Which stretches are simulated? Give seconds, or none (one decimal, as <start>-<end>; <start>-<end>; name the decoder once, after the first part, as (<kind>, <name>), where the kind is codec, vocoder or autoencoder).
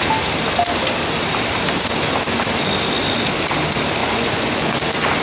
4.0-4.8 (vocoder, Vocos)